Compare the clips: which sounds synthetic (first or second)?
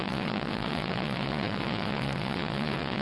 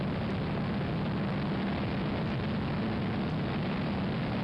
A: first